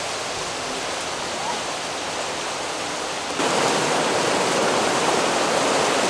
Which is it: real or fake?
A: real